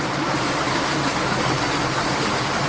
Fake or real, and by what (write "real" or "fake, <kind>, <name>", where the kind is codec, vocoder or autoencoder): real